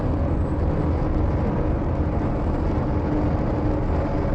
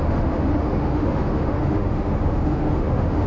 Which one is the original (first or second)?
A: first